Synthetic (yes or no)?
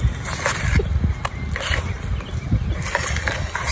no